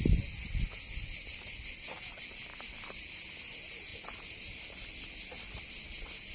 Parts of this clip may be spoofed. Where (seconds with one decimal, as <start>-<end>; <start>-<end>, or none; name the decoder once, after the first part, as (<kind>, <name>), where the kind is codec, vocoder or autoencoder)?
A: none